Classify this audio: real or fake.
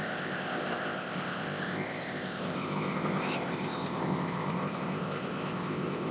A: fake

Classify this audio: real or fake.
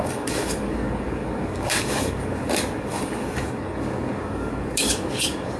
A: fake